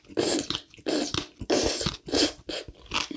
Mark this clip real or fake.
real